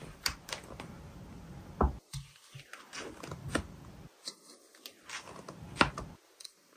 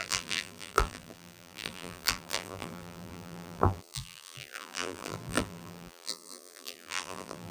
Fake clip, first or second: second